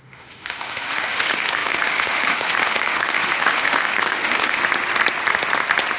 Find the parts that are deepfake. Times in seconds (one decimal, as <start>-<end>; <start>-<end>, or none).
0.0-4.6